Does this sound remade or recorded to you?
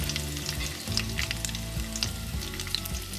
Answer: recorded